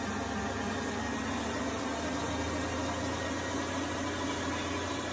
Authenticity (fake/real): real